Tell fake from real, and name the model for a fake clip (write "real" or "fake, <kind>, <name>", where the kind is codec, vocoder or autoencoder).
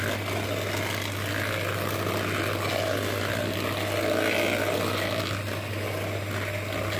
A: real